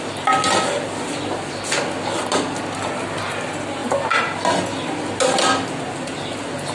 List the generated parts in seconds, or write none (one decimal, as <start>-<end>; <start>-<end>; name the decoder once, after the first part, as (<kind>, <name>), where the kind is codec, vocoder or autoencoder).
none